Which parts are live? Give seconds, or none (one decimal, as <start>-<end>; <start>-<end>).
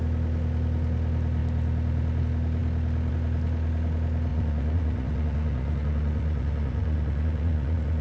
0.0-4.3